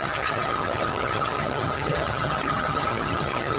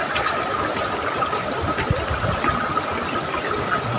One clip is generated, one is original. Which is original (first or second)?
second